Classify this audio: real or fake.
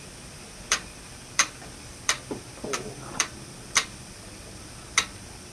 fake